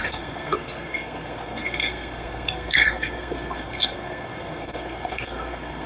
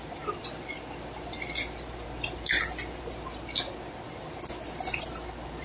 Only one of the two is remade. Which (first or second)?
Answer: first